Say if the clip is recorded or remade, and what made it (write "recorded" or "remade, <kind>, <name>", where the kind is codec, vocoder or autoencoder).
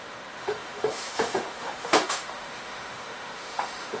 remade, autoencoder, DAC-VAE